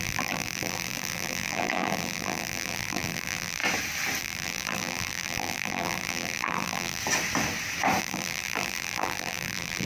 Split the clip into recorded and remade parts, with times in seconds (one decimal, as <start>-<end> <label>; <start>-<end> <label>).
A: 0.0-3.6 remade; 3.6-4.2 recorded; 4.2-7.0 remade; 7.0-8.0 recorded; 8.0-9.9 remade